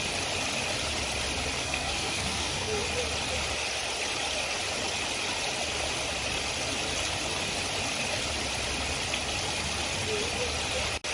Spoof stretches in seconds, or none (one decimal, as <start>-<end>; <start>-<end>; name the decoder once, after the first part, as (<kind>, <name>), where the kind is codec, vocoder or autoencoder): 1.6-2.8 (codec, SNAC)

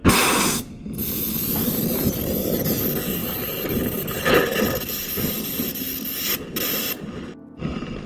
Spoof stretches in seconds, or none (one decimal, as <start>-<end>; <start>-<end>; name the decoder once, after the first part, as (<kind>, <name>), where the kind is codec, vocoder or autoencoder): 0.0-0.8 (vocoder, BigVGAN v2); 3.2-5.8

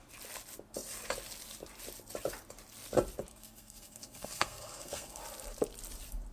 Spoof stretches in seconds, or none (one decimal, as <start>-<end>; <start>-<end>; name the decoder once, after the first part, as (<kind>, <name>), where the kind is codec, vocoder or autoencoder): 3.3-5.2 (codec, SNAC)

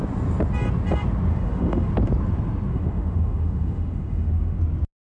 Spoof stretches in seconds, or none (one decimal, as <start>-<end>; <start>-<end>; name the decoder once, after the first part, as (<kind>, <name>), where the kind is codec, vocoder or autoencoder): 1.3-1.9 (autoencoder, DAC-VAE); 2.7-4.6

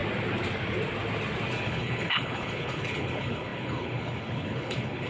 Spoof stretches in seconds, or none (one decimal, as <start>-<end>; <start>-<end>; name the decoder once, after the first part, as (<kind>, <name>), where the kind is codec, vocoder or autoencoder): 1.5-5.1 (codec, HILCodec)